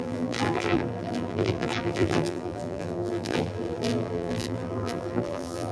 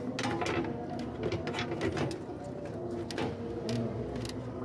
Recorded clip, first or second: second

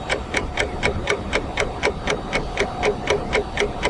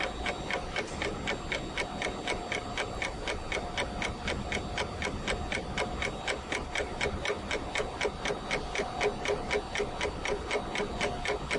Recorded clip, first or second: second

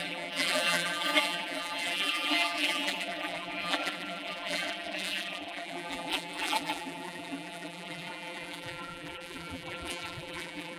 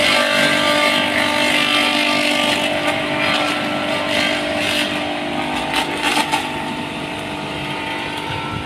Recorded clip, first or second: second